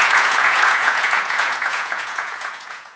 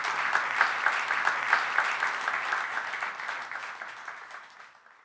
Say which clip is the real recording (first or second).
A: second